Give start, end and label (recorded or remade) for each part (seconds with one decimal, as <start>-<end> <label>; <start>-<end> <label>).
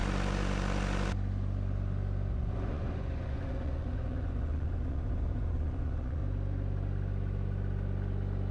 0.0-2.3 recorded; 2.3-6.2 remade; 6.2-8.5 recorded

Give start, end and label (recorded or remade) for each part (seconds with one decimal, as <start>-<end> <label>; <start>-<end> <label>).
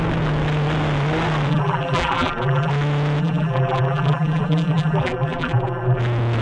0.0-1.5 recorded; 1.5-2.7 remade; 2.7-3.2 recorded; 3.2-6.0 remade; 6.0-6.4 recorded